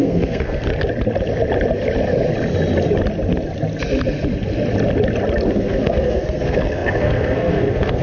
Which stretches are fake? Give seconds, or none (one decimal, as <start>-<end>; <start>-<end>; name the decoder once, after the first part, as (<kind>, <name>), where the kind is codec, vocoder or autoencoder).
0.0-0.7 (codec, SNAC); 5.5-8.0